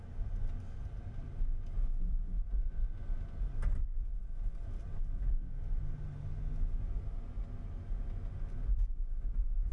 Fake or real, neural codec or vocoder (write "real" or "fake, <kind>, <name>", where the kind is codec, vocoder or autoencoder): real